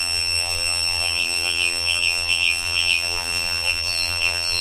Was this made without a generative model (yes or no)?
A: no